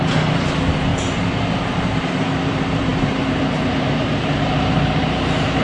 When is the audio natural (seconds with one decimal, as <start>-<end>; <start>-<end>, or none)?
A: none